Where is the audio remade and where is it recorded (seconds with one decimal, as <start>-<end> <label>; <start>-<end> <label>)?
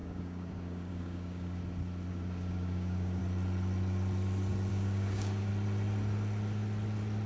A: 0.0-1.6 remade; 1.6-2.1 recorded; 2.1-3.2 remade; 3.2-4.7 recorded; 4.7-5.5 remade; 5.5-7.3 recorded